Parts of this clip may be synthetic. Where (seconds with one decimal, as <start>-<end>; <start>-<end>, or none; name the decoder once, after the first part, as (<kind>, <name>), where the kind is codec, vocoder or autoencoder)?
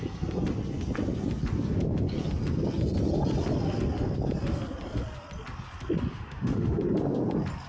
6.1-6.8 (autoencoder, DAC-VAE)